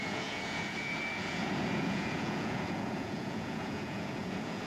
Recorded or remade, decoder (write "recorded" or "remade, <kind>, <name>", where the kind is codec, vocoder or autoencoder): remade, vocoder, Vocos